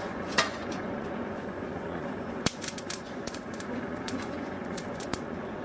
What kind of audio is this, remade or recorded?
remade